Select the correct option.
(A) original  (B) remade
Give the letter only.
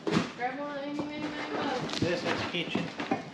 A